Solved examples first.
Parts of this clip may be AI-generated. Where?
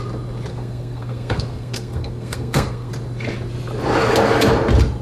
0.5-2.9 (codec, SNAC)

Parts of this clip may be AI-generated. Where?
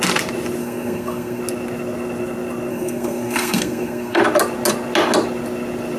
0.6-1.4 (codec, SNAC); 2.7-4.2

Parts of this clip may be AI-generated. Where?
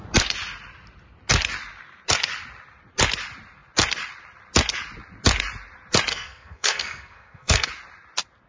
6.1-7.7 (codec, SNAC)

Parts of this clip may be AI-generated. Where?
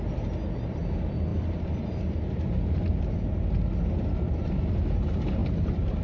none